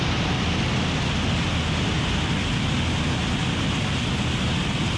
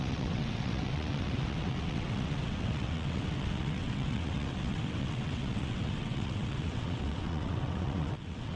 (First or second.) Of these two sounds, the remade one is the second